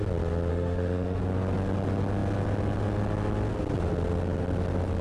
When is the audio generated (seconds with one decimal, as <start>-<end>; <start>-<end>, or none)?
0.5-1.2